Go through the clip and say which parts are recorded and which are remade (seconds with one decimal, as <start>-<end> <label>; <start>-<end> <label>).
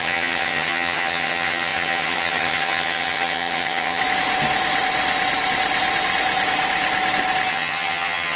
0.0-4.0 remade; 4.0-7.5 recorded; 7.5-8.4 remade